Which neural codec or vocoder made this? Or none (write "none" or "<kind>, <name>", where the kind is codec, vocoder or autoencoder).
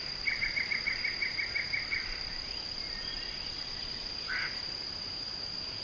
vocoder, BigVGAN v2